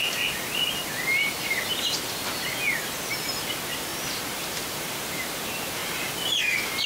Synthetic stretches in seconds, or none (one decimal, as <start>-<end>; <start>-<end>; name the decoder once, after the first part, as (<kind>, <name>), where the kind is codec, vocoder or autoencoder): 3.9-5.3 (vocoder, BigVGAN v2)